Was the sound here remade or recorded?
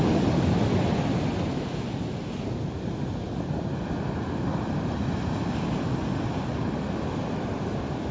recorded